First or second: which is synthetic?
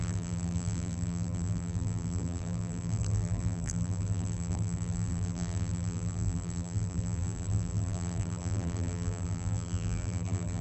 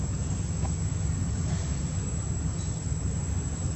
first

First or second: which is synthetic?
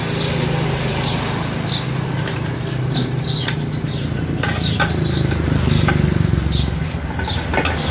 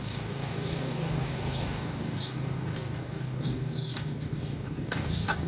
second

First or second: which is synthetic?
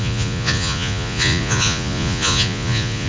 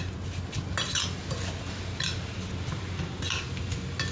first